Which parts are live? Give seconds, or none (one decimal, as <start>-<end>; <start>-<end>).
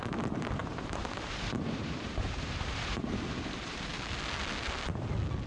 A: 0.0-0.6; 3.9-5.5